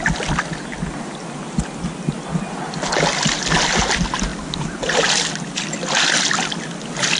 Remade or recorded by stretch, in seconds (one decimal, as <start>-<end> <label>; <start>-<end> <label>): 0.0-7.2 recorded